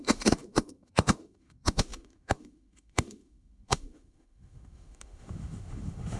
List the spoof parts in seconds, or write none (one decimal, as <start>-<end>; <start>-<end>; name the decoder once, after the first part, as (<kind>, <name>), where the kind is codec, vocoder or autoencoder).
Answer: 0.0-6.2 (autoencoder, DAC-VAE)